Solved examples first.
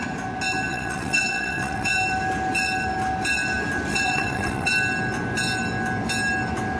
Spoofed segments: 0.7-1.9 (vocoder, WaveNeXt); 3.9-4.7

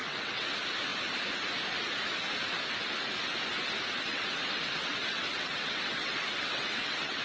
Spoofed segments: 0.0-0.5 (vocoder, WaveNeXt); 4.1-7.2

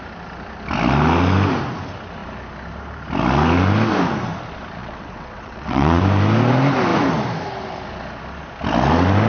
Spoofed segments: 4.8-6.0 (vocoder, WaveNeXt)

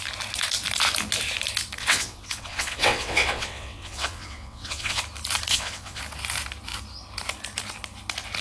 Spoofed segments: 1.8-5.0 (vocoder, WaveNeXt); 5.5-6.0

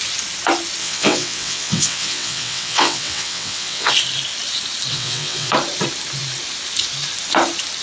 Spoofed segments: 0.8-3.9 (vocoder, WaveNeXt); 4.9-5.5